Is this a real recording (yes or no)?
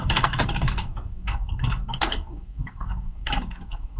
no